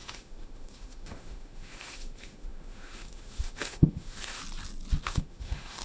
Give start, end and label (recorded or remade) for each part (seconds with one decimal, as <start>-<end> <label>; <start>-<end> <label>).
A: 0.0-4.4 remade; 4.4-5.0 recorded; 5.0-5.8 remade